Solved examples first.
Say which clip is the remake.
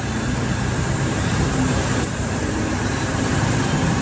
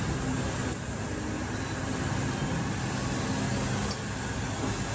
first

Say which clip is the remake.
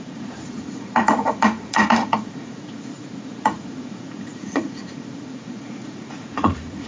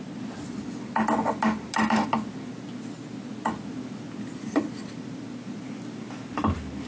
first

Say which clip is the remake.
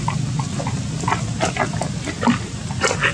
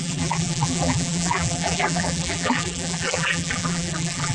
second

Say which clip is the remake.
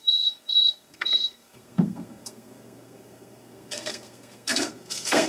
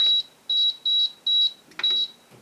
first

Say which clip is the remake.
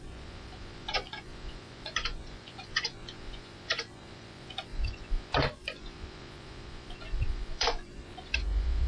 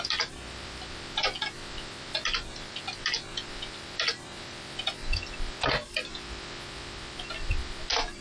first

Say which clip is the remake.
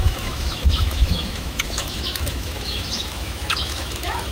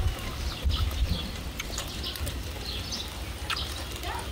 first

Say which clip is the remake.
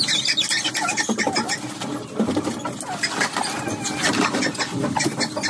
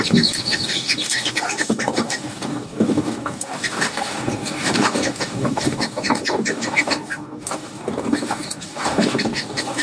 second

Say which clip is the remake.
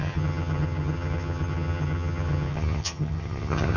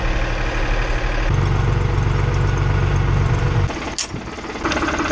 first